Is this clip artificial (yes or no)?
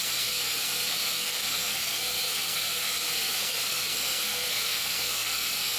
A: yes